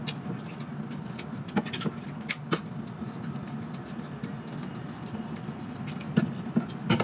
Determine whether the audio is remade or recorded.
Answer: recorded